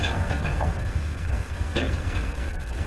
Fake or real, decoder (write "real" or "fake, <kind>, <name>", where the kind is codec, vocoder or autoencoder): fake, codec, SNAC